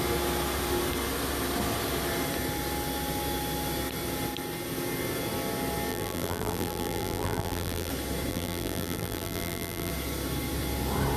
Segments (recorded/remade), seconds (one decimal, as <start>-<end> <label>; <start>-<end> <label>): 0.0-5.9 recorded; 5.9-7.9 remade; 7.9-8.3 recorded; 8.3-9.9 remade; 9.9-11.2 recorded